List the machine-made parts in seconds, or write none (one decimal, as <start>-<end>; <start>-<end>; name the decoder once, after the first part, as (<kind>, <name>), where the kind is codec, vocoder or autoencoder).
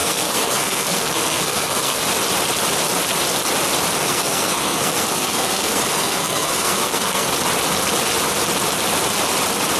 0.0-2.0 (codec, SNAC); 4.0-7.3